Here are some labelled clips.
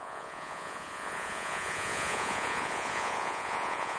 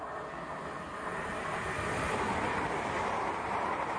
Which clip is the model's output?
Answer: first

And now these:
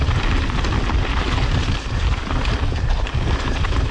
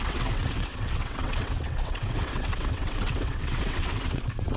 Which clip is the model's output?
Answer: second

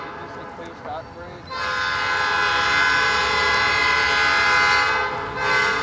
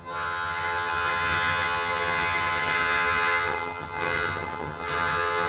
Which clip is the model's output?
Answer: second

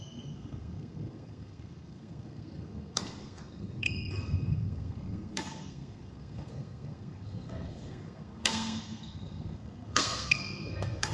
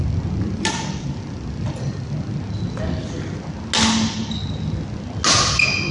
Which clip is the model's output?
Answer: first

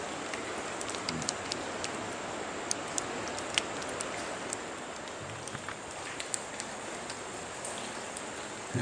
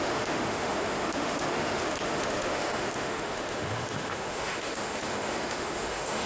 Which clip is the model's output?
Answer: second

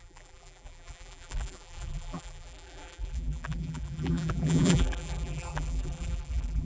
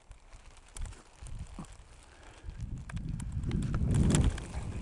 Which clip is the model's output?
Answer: first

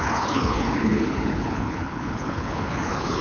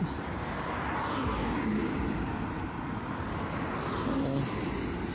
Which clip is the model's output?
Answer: first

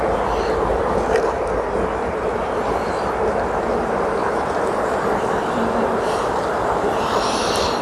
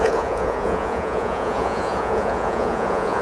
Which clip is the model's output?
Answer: second